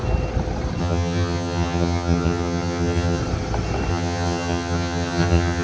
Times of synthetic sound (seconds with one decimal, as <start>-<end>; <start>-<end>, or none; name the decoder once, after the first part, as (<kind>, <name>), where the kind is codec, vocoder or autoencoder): 0.8-3.2 (vocoder, HiFi-GAN); 3.9-5.6